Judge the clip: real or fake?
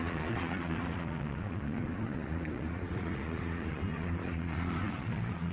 fake